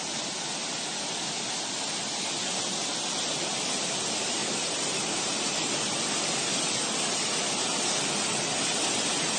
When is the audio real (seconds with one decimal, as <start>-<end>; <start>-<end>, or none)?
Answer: 0.0-9.4